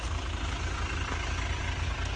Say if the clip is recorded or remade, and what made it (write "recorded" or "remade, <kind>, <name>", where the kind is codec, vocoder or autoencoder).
recorded